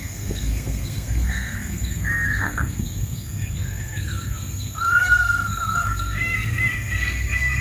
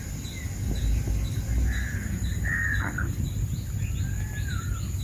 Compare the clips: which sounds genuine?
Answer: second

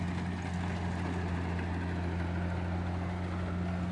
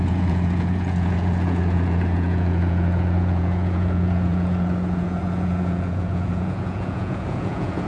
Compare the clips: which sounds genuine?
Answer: first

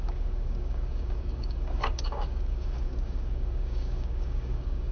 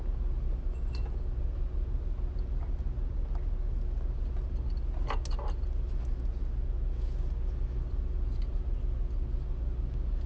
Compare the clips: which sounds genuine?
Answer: second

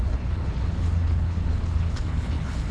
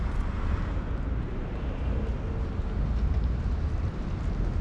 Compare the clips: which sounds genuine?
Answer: second